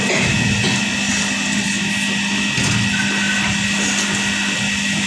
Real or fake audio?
real